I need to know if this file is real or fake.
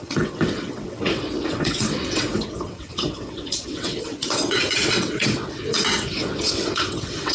fake